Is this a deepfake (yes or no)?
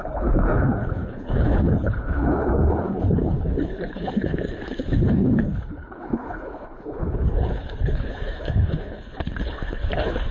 yes